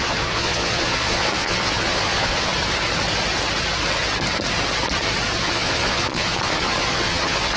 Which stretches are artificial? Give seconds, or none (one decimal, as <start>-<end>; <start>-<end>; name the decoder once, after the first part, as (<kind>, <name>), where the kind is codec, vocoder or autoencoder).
0.0-2.5 (vocoder, Vocos); 5.4-7.6